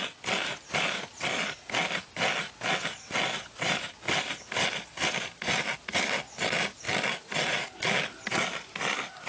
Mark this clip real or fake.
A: real